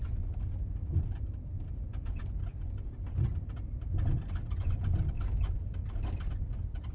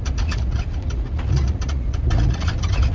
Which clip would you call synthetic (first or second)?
second